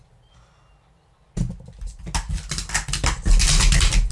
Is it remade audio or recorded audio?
recorded